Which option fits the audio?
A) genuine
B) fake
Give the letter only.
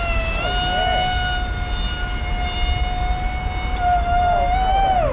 A